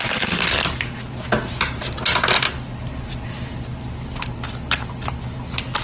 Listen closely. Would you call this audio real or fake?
real